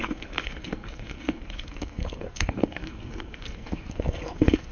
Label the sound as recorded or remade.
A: remade